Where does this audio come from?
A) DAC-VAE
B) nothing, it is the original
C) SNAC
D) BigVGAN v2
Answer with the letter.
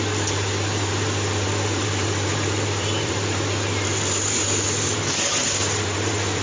D